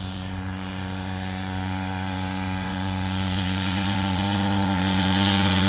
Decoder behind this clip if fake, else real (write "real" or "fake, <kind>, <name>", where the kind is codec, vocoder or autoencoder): fake, vocoder, Vocos